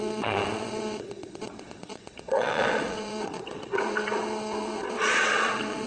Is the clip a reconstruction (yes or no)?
yes